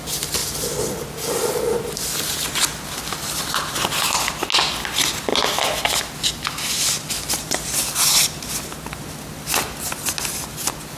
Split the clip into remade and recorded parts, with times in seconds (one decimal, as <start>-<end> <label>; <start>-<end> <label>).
0.0-11.0 recorded